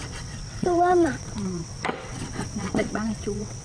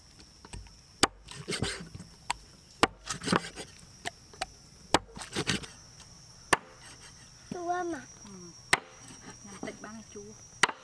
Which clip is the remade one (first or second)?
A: first